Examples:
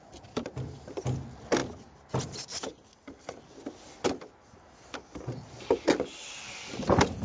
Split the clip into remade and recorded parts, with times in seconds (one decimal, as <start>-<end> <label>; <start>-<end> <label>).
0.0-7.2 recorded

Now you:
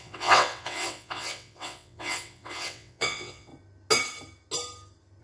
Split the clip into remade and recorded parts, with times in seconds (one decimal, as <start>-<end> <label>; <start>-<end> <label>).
0.0-3.5 remade; 3.5-5.2 recorded

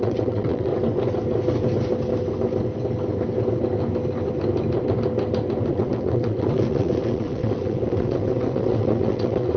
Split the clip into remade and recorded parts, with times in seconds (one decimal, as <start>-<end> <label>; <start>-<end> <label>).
0.0-0.7 remade; 0.7-5.7 recorded; 5.7-9.6 remade